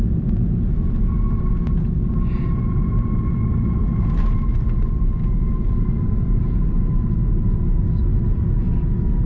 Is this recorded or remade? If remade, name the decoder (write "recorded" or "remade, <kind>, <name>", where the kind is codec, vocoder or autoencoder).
recorded